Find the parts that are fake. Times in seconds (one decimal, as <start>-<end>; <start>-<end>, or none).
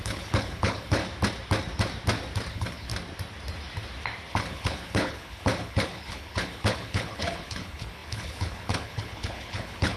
0.0-1.0; 2.5-2.9; 4.3-10.0